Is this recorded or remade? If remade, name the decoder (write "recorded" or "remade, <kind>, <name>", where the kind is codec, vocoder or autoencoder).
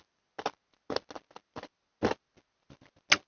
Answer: recorded